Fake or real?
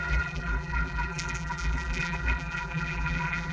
fake